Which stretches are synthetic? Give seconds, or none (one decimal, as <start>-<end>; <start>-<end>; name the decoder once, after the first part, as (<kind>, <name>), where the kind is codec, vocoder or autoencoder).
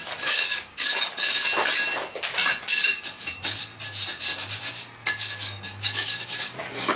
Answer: 0.0-1.5 (codec, DAC); 2.5-3.7; 5.1-7.0